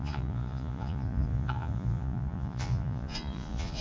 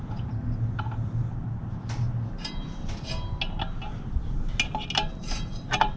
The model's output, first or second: first